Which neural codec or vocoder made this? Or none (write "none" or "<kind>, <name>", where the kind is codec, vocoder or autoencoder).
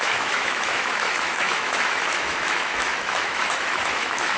autoencoder, DAC-VAE